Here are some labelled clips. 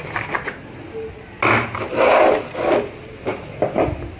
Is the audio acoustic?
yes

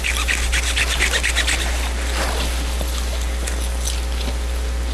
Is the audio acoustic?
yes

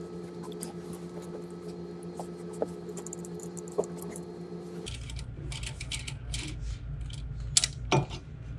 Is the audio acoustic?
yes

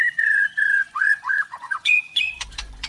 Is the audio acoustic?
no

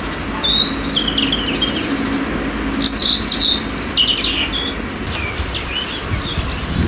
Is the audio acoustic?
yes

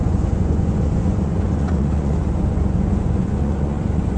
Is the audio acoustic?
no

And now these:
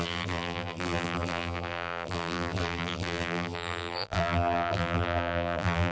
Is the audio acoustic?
no